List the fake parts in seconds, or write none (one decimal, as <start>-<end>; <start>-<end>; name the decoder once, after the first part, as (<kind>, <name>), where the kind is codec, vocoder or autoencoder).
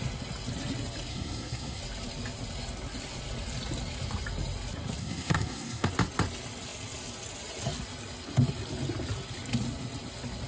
1.1-1.8 (codec, SNAC); 5.0-5.9